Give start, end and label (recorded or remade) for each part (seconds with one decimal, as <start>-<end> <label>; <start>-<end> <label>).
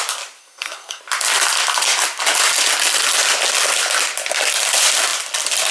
0.0-0.4 recorded; 0.4-1.0 remade; 1.0-5.7 recorded